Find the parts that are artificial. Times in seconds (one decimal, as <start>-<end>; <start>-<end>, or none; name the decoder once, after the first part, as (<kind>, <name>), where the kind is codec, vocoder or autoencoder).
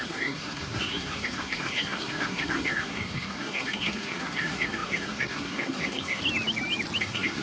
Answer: 0.0-6.2 (codec, SNAC); 7.0-7.4